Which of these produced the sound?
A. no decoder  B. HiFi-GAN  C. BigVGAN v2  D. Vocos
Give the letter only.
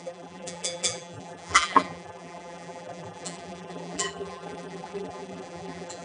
C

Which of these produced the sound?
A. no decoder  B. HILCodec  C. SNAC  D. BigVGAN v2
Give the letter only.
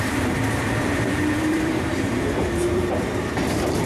D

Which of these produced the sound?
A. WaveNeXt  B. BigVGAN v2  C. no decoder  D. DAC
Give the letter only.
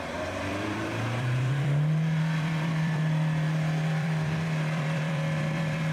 B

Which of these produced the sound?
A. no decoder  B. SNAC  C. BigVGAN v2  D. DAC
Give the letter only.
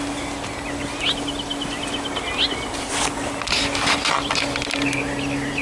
A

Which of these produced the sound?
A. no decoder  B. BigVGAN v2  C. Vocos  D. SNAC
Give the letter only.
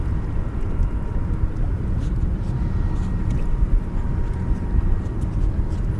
A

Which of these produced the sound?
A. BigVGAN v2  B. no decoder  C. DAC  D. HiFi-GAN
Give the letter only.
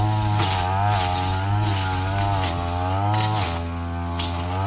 B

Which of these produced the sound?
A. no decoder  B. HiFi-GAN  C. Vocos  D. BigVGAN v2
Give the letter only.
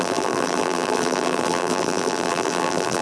D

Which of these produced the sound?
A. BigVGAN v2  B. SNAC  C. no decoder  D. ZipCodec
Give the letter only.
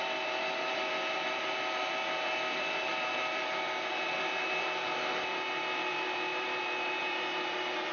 A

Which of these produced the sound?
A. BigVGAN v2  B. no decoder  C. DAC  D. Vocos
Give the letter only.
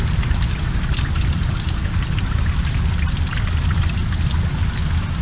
B